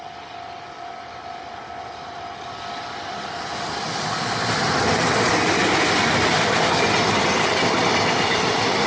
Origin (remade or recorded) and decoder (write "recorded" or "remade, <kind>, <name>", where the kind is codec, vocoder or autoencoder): recorded